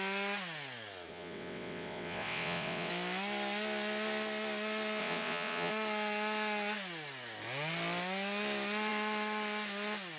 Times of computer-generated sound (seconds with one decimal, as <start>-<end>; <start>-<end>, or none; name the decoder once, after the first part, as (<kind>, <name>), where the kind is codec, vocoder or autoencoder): 1.1-2.9 (vocoder, WaveNeXt); 5.0-5.7